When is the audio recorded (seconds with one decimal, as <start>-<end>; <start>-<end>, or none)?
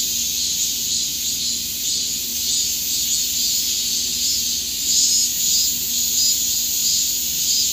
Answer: 0.0-6.8